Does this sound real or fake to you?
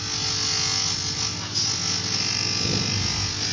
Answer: real